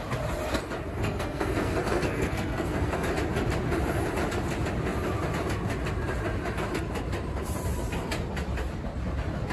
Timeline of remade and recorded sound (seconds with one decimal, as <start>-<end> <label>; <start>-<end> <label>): 0.0-0.9 recorded; 0.9-3.1 remade; 3.1-9.5 recorded